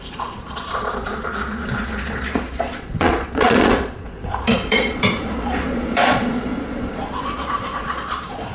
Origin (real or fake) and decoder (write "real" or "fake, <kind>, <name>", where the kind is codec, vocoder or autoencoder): fake, vocoder, Vocos